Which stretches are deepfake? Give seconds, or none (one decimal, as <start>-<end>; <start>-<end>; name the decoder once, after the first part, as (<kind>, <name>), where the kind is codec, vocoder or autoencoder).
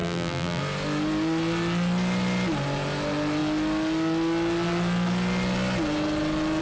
0.0-0.6 (vocoder, BigVGAN v2)